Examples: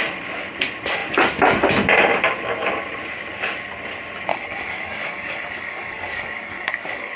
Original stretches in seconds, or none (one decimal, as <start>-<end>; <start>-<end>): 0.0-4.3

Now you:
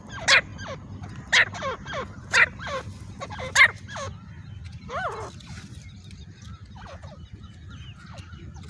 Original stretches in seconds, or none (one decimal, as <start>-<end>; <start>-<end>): 0.0-8.7

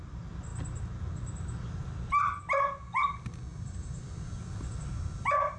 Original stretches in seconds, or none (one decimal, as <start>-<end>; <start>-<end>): 0.0-3.5

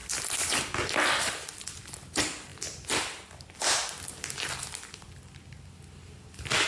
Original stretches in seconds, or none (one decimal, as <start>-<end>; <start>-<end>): 0.0-6.7